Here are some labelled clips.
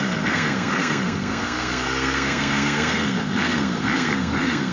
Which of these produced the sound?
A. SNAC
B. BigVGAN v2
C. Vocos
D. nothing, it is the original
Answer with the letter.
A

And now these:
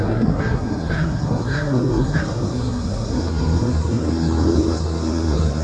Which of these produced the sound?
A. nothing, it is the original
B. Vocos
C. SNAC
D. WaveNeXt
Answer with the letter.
C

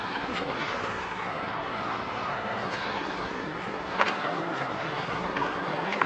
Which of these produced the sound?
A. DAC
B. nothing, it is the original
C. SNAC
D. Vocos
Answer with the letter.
C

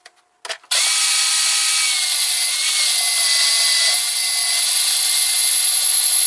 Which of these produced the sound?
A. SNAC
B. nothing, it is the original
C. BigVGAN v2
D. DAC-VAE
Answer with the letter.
B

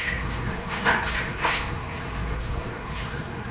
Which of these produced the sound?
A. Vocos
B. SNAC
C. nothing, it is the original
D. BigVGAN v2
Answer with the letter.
B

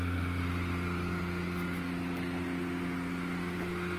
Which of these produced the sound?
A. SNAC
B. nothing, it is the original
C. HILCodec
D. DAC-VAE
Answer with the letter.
B